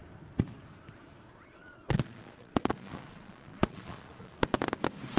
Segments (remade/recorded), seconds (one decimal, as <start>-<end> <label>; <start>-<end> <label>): 0.0-1.3 recorded; 1.3-4.4 remade; 4.4-5.2 recorded